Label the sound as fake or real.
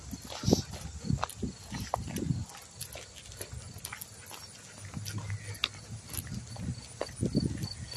real